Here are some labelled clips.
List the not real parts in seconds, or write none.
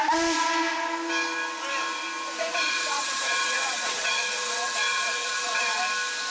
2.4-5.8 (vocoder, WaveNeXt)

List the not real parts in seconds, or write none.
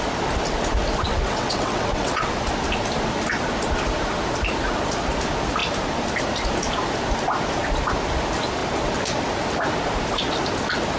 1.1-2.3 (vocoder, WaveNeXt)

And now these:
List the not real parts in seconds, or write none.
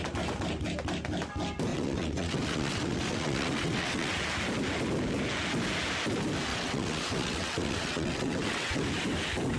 1.7-4.2 (vocoder, WaveNeXt); 6.5-8.8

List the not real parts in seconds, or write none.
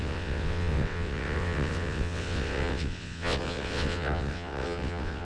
0.0-5.2 (vocoder, WaveNeXt)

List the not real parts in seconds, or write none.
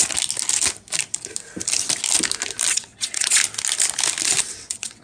2.7-3.4 (vocoder, WaveNeXt); 4.4-5.0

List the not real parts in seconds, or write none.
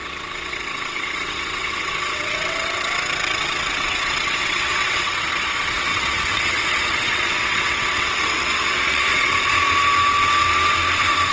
0.0-9.3 (vocoder, WaveNeXt)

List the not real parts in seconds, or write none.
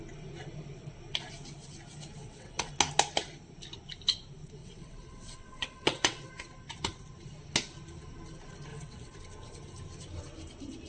2.2-2.7 (vocoder, WaveNeXt); 4.6-6.3; 8.7-9.2